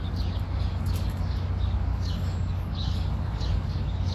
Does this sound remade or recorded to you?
remade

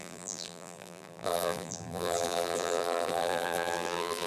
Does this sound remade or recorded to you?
remade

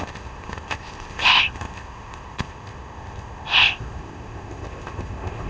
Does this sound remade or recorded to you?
remade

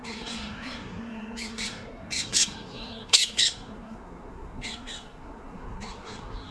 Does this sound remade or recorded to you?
remade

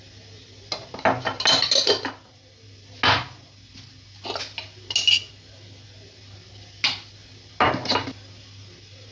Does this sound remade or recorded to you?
recorded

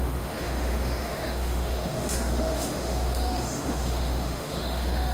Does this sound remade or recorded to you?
remade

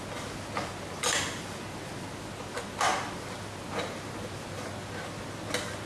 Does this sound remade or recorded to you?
recorded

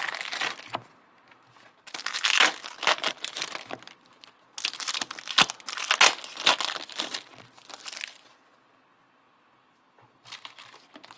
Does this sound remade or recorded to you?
recorded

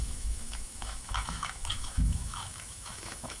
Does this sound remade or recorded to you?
remade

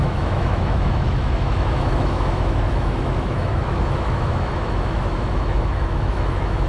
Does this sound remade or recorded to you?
remade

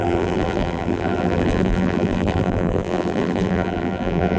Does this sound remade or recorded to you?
remade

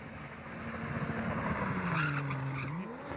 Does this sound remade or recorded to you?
recorded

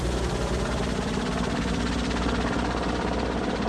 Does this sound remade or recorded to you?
recorded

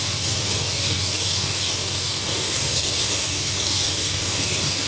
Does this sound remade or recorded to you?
remade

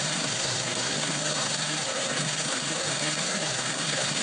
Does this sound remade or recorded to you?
remade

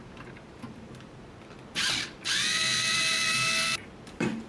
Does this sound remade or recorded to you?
remade